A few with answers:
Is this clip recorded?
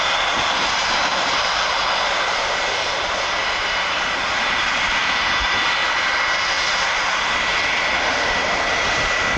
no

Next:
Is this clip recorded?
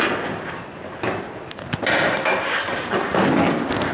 yes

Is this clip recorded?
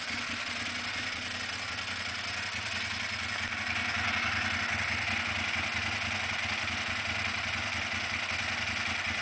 yes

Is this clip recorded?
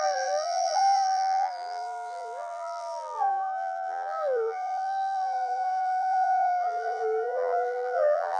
no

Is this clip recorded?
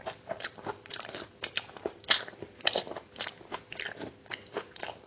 no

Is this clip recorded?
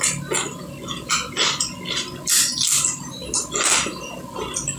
yes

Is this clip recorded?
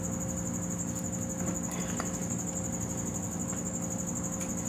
yes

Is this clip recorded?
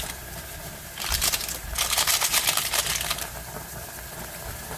no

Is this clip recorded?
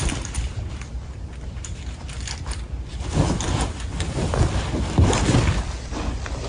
no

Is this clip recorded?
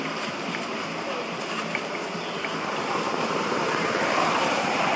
no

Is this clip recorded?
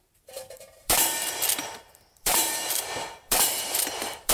no